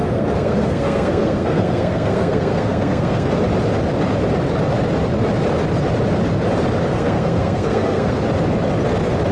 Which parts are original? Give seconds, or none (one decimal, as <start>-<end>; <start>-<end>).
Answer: 3.4-6.9; 8.2-9.3